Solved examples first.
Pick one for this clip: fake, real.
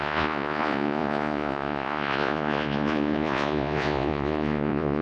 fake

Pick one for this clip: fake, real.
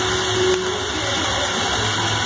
real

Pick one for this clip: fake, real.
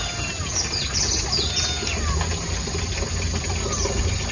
real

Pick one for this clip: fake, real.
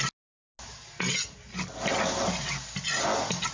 real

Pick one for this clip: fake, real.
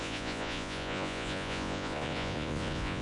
fake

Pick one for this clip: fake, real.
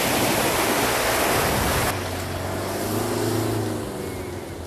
real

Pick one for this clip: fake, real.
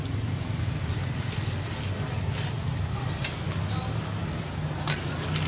real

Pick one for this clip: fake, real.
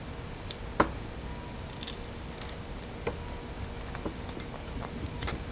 real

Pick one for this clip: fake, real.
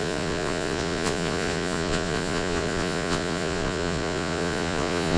fake